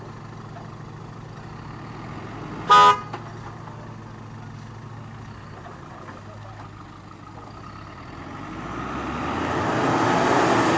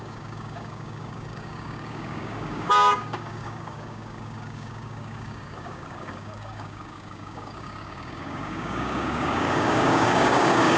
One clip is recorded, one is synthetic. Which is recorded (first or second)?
first